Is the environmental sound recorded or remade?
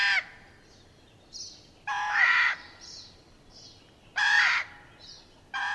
recorded